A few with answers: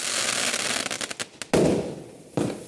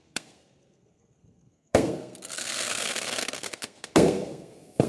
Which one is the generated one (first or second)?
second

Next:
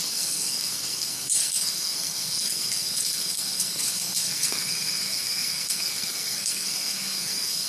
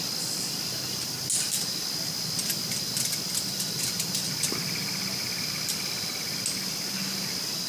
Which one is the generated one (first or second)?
first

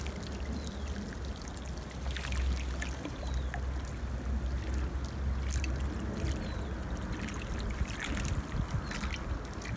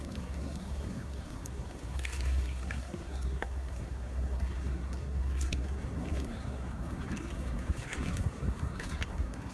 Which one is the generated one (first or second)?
second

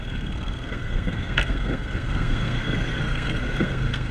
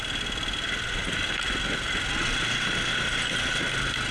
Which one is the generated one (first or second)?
first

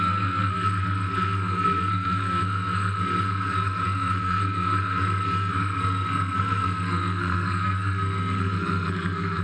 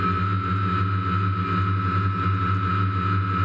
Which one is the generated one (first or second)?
first